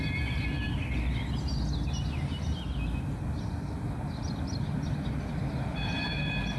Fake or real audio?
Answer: real